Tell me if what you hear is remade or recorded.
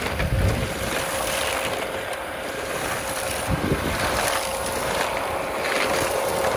remade